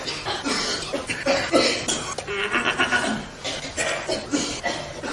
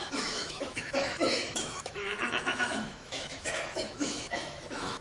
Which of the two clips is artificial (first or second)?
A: second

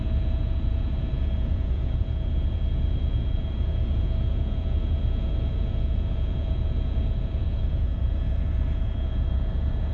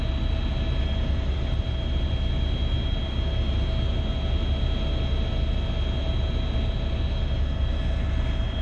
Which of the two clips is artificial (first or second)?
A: first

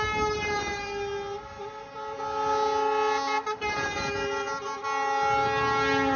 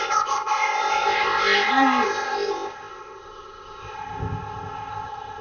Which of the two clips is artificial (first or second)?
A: second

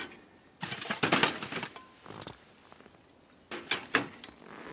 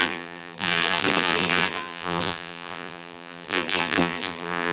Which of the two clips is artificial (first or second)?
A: second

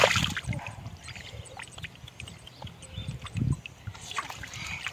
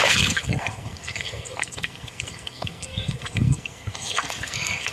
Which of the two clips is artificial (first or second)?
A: second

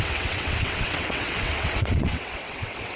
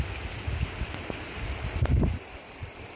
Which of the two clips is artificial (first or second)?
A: first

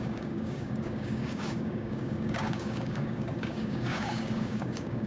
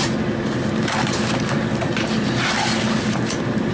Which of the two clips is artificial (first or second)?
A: first